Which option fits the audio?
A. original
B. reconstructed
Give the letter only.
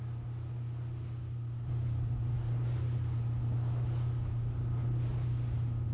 A